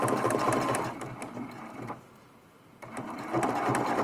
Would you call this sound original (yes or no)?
yes